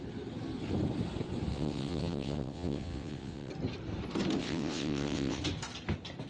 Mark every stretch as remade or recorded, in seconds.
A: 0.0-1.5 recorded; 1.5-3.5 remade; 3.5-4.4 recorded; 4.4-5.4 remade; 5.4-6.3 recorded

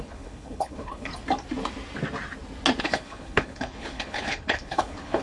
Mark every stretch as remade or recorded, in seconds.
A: 0.0-1.1 remade; 1.1-2.8 recorded; 2.8-5.2 remade